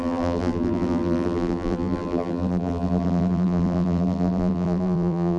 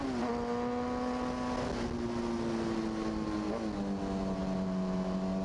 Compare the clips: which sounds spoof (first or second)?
first